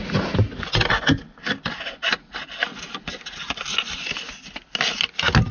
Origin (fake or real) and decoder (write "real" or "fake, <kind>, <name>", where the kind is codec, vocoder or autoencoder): real